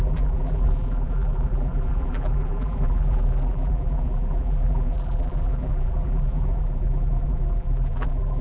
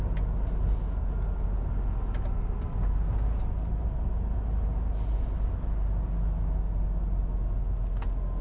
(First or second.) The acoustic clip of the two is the second